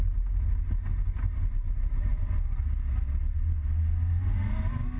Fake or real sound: real